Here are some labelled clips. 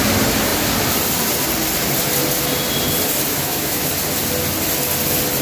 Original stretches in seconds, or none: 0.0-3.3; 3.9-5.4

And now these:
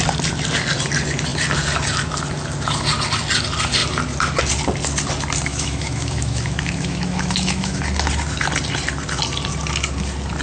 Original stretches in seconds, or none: 0.0-5.5; 7.8-10.4

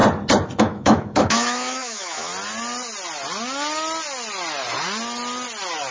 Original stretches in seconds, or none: 0.0-0.6; 2.3-5.9

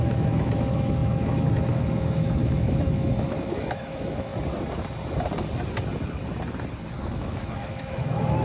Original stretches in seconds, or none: 4.3-7.0

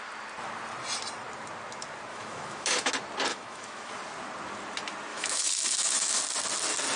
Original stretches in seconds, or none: 0.0-2.1; 2.9-3.3; 3.9-5.1; 6.2-7.0